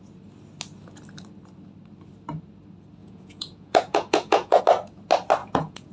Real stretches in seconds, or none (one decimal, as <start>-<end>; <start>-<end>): 0.0-3.0; 4.6-5.4